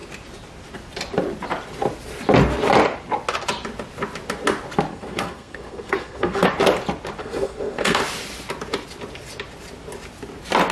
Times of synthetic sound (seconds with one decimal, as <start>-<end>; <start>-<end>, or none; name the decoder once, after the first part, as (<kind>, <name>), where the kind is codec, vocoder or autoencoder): 4.9-6.5 (codec, SNAC); 7.2-8.0